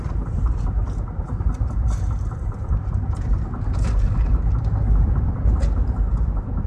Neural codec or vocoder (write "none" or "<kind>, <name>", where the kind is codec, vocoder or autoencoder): vocoder, BigVGAN v2